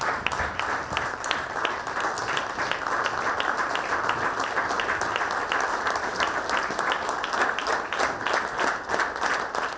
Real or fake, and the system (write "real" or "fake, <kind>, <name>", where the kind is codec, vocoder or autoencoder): real